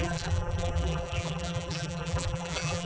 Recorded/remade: remade